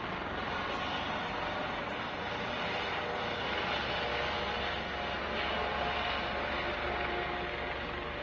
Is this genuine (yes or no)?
yes